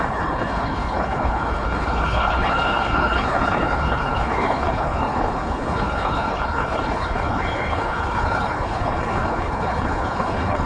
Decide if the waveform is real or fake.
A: fake